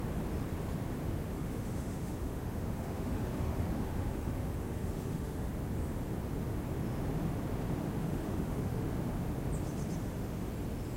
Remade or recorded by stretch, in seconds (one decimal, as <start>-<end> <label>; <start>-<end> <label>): 0.0-1.0 recorded; 1.0-5.5 remade; 5.5-8.0 recorded; 8.0-8.9 remade; 8.9-10.0 recorded; 10.0-10.5 remade; 10.5-11.0 recorded